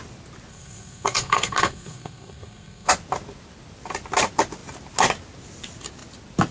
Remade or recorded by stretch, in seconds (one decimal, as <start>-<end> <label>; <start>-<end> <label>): 0.0-0.5 recorded; 0.5-2.9 remade; 2.9-6.5 recorded